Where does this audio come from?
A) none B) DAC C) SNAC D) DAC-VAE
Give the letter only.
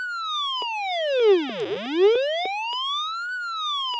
A